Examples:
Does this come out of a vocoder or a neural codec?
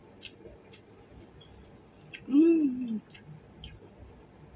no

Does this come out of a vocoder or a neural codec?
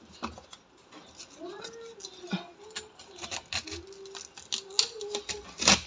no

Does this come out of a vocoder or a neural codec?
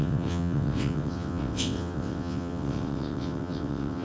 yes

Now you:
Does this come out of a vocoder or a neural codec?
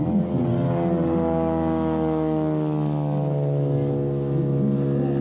no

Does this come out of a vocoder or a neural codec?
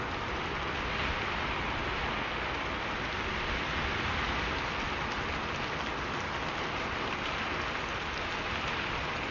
no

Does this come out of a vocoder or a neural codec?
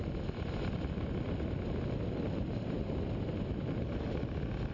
no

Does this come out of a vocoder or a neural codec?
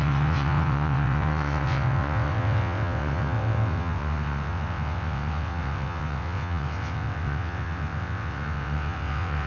yes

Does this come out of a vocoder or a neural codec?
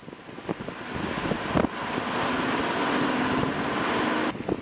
no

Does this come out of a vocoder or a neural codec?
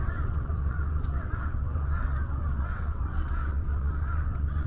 yes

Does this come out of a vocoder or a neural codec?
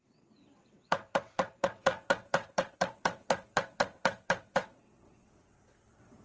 yes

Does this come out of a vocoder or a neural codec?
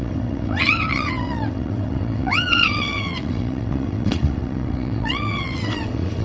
yes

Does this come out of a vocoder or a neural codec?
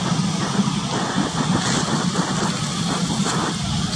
no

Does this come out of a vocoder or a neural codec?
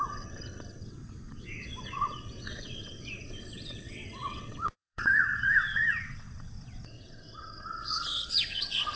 yes